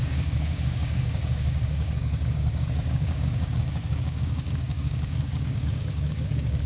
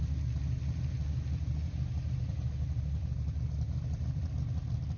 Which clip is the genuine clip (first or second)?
second